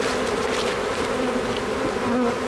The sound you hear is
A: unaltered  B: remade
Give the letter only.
A